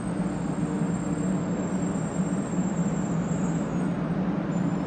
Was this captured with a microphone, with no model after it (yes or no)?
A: yes